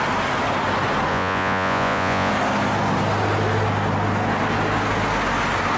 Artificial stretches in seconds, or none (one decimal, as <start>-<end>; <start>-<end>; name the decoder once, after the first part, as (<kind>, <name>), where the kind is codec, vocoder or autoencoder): 1.1-2.3 (vocoder, Vocos)